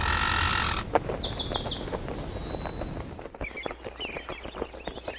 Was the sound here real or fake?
real